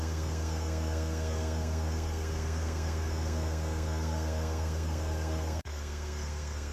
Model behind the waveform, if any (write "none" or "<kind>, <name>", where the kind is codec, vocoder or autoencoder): codec, SNAC